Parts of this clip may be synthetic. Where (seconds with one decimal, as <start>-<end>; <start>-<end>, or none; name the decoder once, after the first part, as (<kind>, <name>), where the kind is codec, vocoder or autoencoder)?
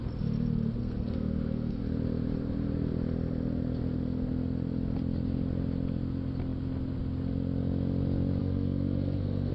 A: 0.8-1.8 (codec, SNAC); 8.4-9.5